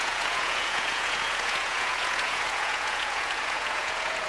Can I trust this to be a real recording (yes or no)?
no